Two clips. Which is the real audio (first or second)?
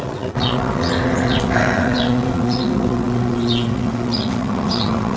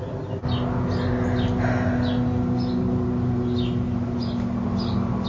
second